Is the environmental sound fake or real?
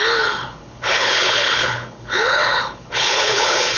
fake